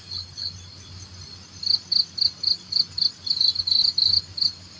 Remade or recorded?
recorded